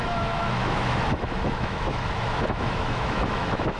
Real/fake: fake